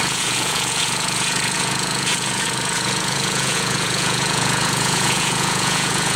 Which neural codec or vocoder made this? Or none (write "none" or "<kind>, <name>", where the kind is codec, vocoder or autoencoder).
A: vocoder, Vocos